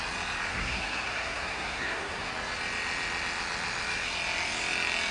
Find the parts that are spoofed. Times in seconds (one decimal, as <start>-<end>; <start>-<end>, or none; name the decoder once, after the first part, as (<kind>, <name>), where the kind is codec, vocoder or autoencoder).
0.5-2.3 (codec, SNAC)